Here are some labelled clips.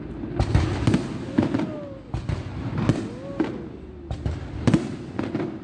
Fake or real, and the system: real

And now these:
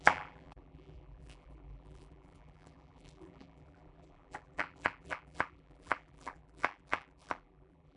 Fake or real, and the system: fake, vocoder, BigVGAN v2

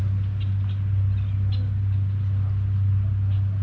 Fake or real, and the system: real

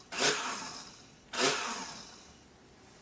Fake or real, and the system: real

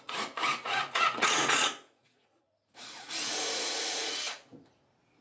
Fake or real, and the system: fake, vocoder, Vocos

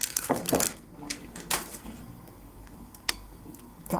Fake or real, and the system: fake, codec, SNAC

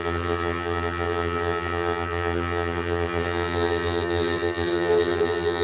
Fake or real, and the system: fake, vocoder, HiFi-GAN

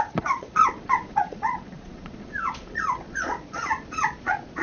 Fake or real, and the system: fake, vocoder, Vocos